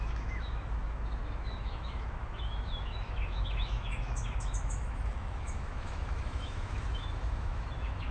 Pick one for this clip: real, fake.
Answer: fake